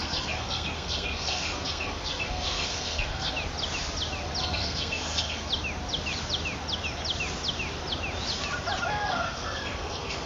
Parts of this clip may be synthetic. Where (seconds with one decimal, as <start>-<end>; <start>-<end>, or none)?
0.0-3.3; 4.4-5.5; 8.9-10.3